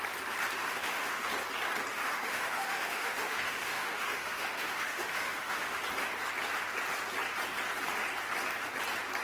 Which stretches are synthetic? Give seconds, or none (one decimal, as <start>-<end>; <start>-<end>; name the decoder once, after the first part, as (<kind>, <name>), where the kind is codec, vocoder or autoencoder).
0.6-1.3 (autoencoder, DAC-VAE); 1.9-5.8